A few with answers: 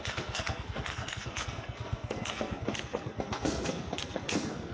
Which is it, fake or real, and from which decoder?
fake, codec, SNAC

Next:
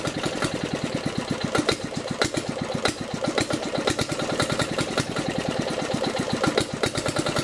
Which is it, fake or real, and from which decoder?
real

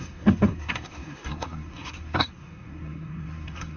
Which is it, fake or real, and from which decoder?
fake, codec, SNAC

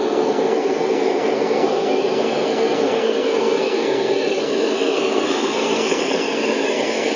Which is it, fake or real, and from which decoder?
fake, codec, SNAC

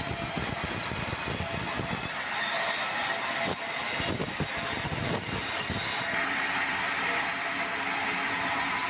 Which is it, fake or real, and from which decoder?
real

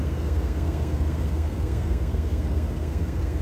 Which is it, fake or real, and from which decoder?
fake, codec, SNAC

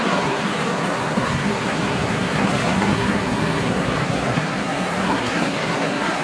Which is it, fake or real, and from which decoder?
fake, codec, SNAC